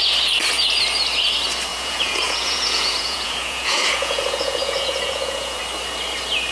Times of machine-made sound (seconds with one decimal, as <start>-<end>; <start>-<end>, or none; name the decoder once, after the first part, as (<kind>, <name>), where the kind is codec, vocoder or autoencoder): 1.7-5.6 (vocoder, Vocos)